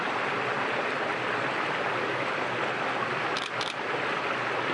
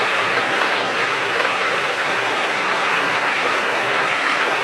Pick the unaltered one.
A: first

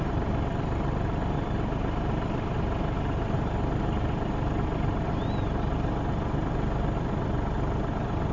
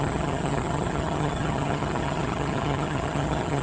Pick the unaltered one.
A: first